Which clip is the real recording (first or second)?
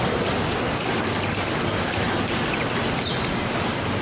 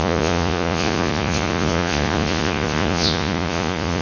first